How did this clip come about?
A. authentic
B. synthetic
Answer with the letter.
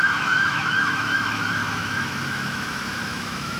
B